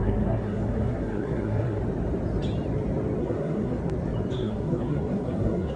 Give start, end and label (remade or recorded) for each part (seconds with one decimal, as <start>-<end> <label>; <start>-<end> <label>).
0.0-1.8 remade; 1.8-3.2 recorded; 3.2-3.8 remade; 3.8-4.3 recorded; 4.3-5.8 remade